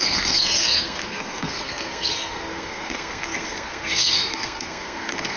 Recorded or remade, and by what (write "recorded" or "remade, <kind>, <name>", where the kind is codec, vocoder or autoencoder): remade, codec, SNAC